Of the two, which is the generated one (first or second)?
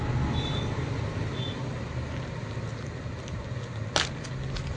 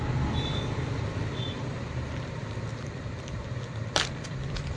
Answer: second